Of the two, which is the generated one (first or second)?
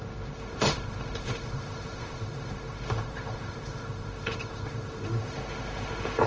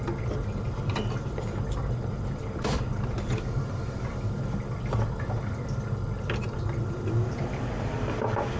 first